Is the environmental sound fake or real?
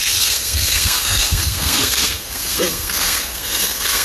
fake